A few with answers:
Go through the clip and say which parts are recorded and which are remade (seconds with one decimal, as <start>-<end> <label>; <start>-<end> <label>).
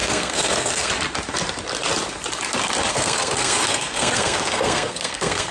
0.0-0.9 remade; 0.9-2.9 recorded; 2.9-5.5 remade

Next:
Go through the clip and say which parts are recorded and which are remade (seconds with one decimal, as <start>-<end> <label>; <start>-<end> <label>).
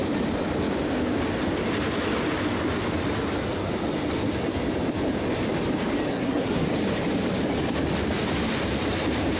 0.0-6.1 recorded; 6.1-6.7 remade; 6.7-9.4 recorded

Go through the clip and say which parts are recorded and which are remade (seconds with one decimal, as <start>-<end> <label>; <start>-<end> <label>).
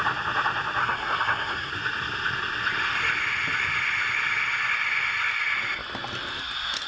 0.0-0.8 recorded; 0.8-1.7 remade; 1.7-6.9 recorded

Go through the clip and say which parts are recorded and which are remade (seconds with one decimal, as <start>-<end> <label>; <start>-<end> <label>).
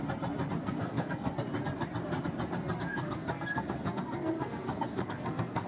0.0-0.6 recorded; 0.6-1.4 remade; 1.4-2.9 recorded; 2.9-5.7 remade